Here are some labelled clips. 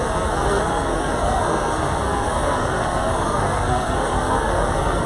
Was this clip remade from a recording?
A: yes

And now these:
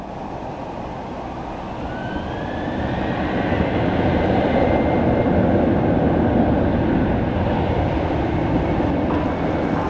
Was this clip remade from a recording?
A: no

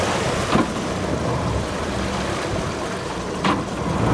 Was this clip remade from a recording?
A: no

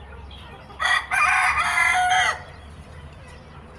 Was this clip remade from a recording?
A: no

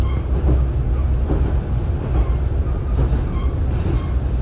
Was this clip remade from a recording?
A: no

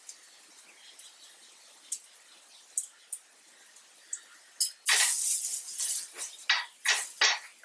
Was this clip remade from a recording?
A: no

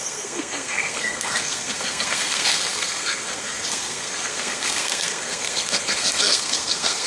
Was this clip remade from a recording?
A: yes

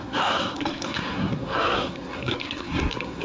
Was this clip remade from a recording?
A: yes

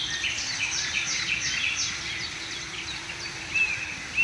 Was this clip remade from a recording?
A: no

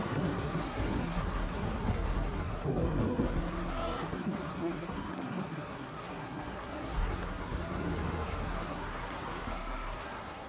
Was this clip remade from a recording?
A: yes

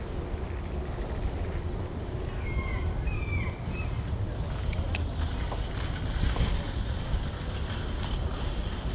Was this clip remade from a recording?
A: no